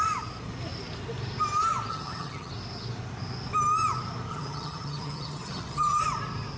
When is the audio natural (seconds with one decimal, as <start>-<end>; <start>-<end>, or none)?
0.0-1.9; 2.5-4.3; 6.0-6.6